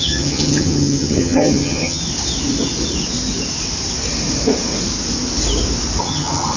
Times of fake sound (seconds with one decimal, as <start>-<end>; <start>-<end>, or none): 0.0-2.0; 6.0-6.6